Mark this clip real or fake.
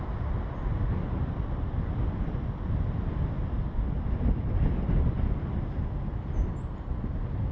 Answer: real